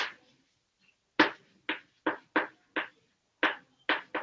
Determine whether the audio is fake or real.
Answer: real